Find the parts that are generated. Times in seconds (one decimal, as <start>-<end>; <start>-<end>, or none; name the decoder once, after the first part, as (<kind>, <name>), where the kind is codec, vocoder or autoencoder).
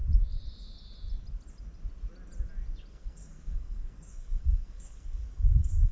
2.9-5.9 (codec, SNAC)